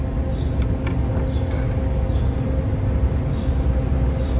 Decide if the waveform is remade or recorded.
recorded